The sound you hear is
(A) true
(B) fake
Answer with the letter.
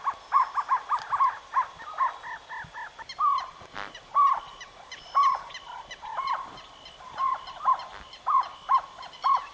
A